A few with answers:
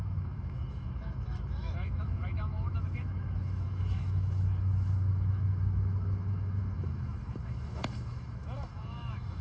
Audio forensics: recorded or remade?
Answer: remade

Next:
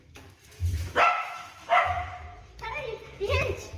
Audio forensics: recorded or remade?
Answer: remade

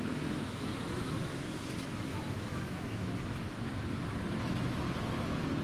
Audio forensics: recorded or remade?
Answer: remade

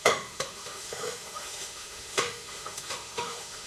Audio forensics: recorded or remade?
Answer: remade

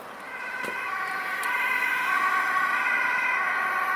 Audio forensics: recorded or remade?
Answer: recorded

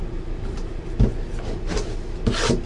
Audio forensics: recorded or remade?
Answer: recorded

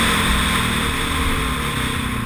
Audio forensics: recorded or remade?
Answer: recorded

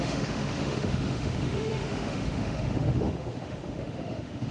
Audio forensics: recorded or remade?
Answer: remade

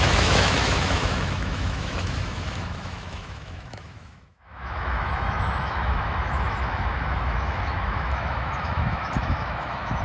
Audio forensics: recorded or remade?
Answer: remade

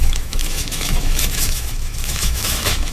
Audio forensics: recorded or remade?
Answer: remade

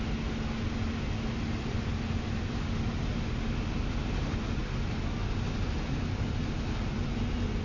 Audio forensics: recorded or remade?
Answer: recorded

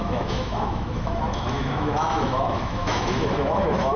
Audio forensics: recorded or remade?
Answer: remade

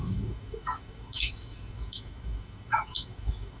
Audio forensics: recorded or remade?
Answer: remade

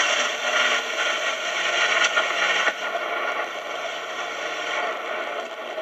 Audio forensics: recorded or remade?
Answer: recorded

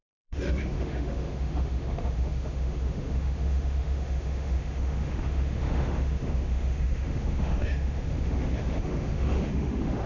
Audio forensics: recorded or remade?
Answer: remade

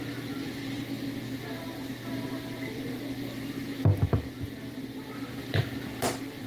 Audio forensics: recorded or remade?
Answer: recorded